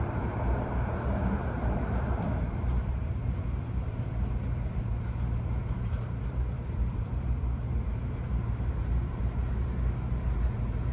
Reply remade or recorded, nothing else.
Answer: remade